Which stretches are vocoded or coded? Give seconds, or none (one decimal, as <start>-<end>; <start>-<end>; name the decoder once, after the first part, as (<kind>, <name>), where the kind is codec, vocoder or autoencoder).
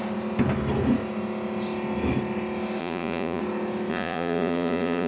2.8-3.4 (vocoder, Vocos); 3.9-5.1